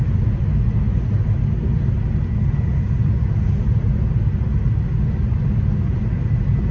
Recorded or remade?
recorded